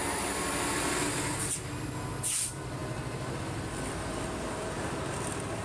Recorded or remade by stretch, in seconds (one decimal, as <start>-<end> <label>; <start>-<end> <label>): 0.0-5.6 remade